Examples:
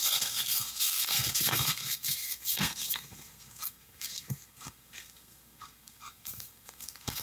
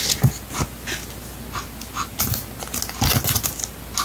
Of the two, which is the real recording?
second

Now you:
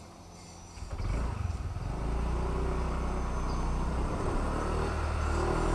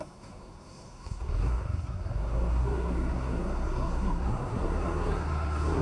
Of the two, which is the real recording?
first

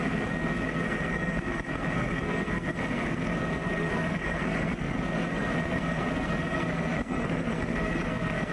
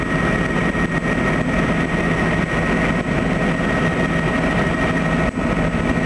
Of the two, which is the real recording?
second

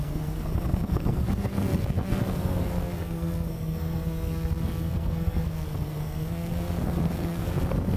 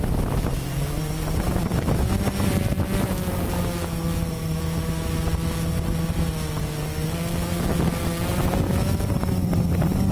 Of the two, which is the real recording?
second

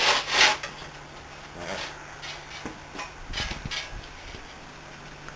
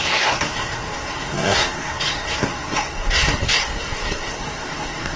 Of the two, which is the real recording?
first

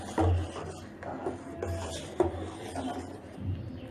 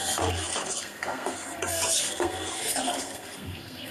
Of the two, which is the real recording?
first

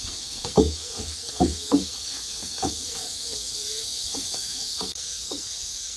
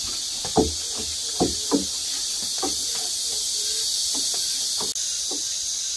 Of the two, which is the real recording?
second